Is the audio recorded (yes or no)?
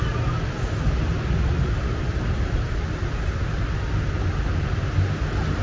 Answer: yes